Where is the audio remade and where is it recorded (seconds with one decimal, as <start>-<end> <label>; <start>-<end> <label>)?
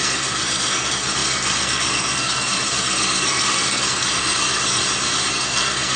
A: 0.0-4.8 remade; 4.8-5.3 recorded; 5.3-6.0 remade